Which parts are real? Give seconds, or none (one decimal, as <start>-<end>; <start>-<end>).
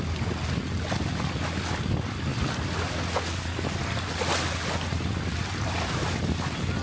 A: 0.0-6.8